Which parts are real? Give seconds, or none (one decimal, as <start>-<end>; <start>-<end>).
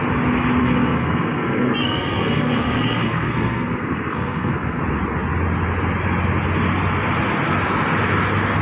0.0-0.6; 4.8-8.6